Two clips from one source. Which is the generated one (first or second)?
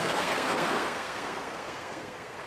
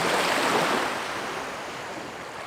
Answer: first